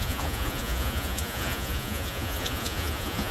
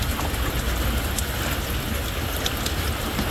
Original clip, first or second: second